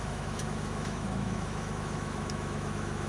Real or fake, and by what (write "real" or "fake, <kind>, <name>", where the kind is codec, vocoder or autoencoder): fake, autoencoder, DAC-VAE